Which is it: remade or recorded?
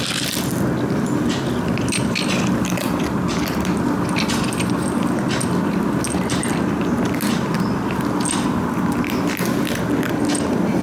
recorded